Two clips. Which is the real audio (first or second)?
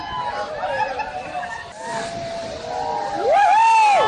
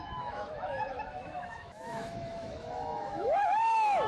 first